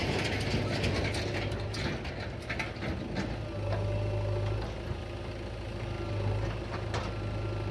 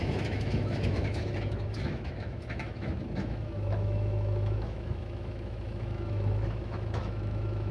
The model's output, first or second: second